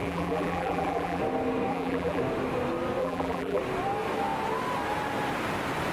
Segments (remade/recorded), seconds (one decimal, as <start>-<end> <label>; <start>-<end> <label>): 0.0-1.2 remade; 1.2-1.7 recorded; 1.7-2.2 remade; 2.2-3.0 recorded; 3.0-3.6 remade; 3.6-5.9 recorded